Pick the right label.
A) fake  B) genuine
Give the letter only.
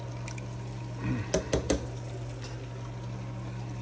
B